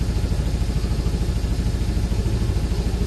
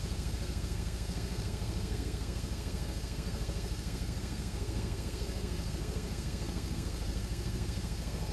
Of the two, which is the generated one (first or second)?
second